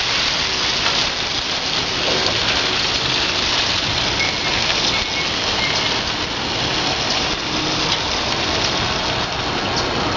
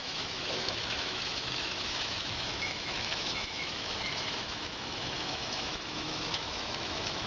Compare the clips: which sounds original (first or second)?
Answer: first